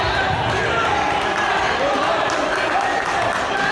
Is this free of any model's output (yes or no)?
yes